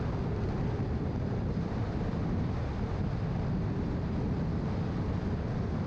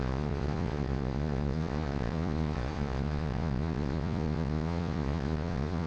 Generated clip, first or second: second